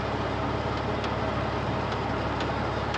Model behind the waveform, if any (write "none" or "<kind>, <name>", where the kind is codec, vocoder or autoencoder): none